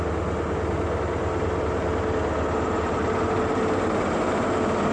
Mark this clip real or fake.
real